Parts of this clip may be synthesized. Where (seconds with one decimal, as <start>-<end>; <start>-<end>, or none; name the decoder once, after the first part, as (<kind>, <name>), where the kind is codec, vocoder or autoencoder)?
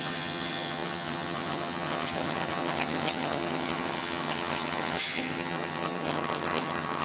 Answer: 0.0-7.0 (vocoder, HiFi-GAN)